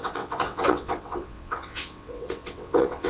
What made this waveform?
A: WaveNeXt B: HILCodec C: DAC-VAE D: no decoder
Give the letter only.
A